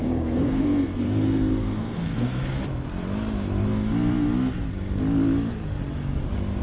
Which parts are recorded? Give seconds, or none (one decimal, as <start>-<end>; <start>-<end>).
2.5-6.6

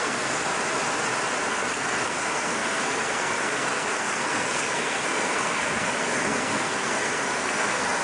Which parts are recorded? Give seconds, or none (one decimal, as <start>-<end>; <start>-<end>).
0.5-1.5

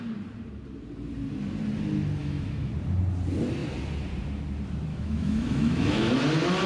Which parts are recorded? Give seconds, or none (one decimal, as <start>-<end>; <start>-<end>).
0.0-2.2; 2.7-4.9; 6.1-6.7

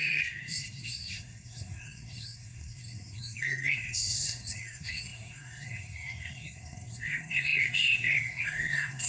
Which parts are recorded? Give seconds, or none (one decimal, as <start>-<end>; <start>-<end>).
none

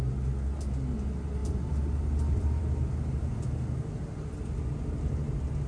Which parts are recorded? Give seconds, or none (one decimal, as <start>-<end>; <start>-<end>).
0.0-5.7

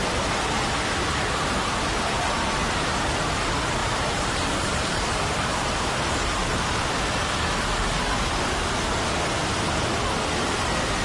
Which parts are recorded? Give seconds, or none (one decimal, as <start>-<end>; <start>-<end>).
0.0-3.8; 6.9-11.0